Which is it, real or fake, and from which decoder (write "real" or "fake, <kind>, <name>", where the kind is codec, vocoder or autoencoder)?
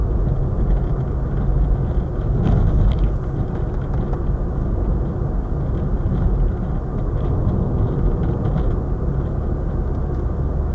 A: real